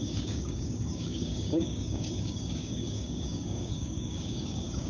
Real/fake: fake